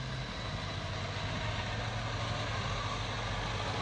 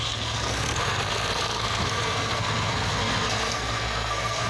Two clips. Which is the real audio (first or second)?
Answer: first